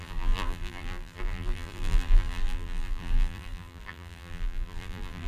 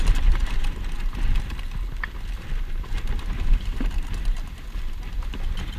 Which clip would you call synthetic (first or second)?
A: first